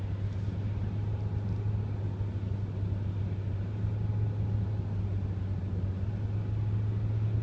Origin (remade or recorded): recorded